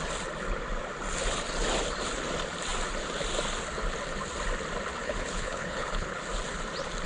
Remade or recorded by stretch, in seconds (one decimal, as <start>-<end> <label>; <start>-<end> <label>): 0.0-4.9 recorded; 4.9-6.2 remade; 6.2-7.1 recorded